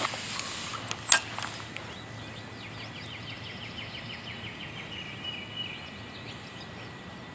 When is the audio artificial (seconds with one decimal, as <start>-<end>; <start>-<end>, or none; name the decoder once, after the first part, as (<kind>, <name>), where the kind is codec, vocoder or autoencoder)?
none